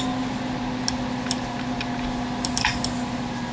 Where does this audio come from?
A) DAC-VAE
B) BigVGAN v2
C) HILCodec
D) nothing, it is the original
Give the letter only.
D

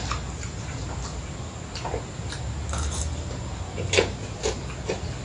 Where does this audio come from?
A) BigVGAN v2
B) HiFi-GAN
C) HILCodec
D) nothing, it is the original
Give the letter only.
D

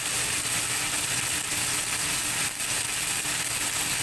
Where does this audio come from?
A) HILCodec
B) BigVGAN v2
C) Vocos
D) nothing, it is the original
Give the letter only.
D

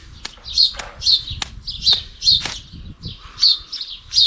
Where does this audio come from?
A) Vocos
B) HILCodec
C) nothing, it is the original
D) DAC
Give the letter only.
C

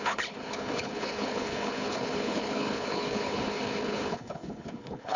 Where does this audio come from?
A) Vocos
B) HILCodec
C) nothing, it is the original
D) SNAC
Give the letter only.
B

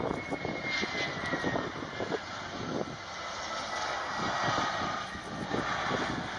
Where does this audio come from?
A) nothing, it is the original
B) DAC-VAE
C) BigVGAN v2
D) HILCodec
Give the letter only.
A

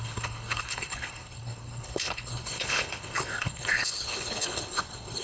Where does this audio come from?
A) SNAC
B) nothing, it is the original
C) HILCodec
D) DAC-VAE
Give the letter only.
C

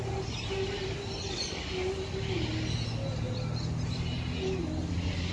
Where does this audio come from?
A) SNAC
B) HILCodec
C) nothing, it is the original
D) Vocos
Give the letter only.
C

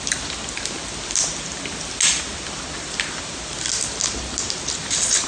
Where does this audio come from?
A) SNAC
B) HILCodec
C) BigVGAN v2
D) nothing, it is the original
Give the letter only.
D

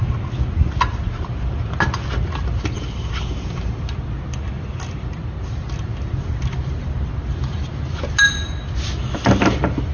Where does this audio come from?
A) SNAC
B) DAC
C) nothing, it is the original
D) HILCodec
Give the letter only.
C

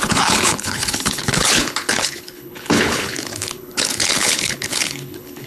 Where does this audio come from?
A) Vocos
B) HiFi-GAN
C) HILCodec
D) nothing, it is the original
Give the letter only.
C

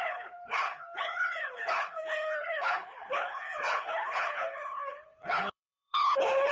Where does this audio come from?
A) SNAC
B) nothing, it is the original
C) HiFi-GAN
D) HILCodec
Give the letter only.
D